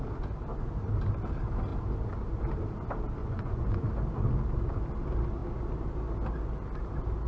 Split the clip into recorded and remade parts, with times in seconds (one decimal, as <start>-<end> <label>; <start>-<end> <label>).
0.0-3.2 recorded; 3.2-3.9 remade; 3.9-7.3 recorded